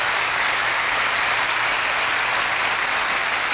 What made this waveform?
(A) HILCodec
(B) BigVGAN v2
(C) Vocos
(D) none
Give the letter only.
D